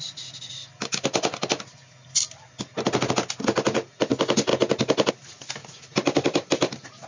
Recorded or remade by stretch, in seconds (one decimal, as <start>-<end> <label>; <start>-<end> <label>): 0.0-7.1 recorded